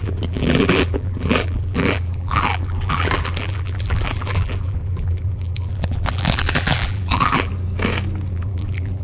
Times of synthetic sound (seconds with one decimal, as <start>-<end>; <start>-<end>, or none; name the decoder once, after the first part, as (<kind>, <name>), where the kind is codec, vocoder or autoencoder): 0.0-7.5 (vocoder, BigVGAN v2); 8.3-9.0